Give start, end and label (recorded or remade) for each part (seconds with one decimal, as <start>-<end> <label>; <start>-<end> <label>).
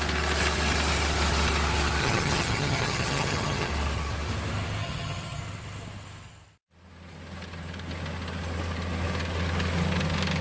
0.0-2.0 recorded; 2.0-3.7 remade; 3.7-4.8 recorded; 4.8-5.4 remade; 5.4-10.4 recorded